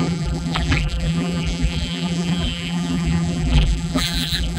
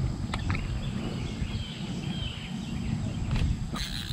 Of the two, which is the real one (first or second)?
second